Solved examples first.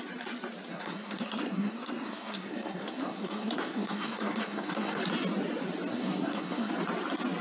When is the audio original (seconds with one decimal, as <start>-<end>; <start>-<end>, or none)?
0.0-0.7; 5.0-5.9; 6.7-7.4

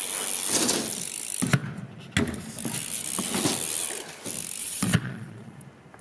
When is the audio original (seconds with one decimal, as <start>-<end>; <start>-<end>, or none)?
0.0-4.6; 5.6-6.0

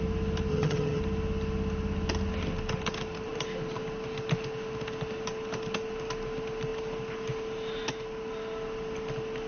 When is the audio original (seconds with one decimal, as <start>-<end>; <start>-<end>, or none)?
0.0-0.5; 1.0-9.5

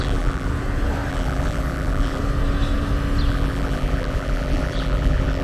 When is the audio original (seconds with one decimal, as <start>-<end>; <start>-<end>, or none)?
0.5-1.1; 2.2-3.3